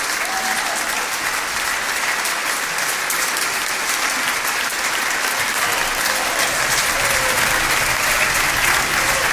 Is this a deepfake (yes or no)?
no